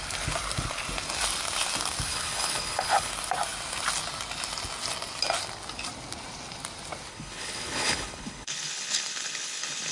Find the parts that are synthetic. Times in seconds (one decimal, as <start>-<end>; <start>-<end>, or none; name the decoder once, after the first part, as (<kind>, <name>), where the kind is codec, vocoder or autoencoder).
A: 2.1-3.1 (codec, HILCodec); 7.1-9.9